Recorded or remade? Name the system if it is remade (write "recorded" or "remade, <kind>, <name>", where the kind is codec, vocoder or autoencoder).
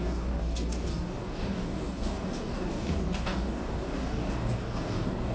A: remade, codec, DAC